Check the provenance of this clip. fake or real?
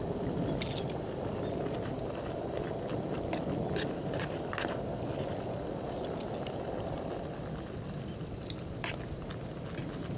real